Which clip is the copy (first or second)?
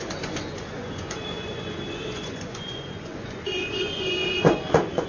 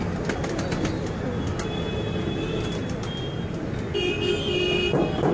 first